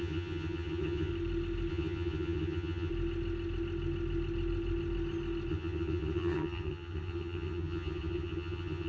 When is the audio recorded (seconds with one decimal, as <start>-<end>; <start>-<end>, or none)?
1.1-1.7; 2.9-5.5